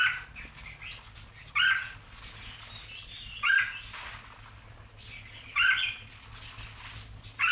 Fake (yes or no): no